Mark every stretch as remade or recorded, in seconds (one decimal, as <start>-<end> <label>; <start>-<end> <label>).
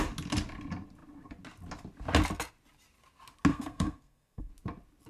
0.0-3.5 recorded; 3.5-4.5 remade; 4.5-5.1 recorded